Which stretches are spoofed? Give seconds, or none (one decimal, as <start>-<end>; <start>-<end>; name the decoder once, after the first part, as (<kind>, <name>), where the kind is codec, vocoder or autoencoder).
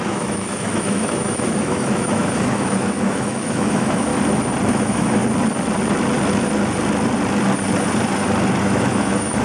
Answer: 0.0-4.1 (autoencoder, DAC-VAE); 4.7-5.2; 8.6-9.4